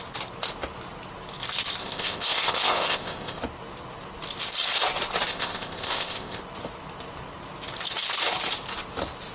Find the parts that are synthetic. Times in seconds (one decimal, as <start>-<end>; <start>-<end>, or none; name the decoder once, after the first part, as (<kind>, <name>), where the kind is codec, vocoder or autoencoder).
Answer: 1.8-3.4 (codec, ZipCodec); 5.3-6.4